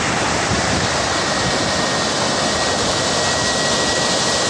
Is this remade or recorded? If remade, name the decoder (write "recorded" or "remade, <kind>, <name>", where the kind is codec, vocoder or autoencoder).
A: recorded